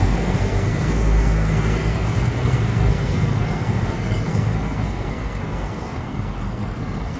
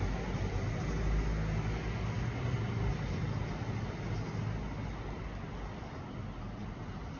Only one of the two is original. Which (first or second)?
second